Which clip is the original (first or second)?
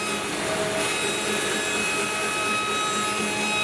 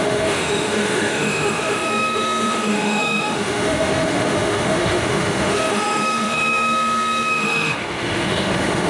first